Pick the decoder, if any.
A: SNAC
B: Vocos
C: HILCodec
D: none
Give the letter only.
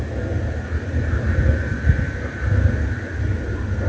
D